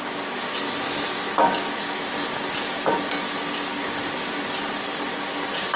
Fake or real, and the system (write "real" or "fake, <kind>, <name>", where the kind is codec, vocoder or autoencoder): real